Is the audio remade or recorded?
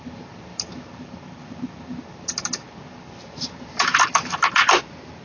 recorded